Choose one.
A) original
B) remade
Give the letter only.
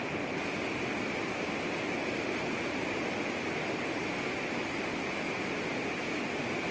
A